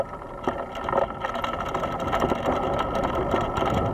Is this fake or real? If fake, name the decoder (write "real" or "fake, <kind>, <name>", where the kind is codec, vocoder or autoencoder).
real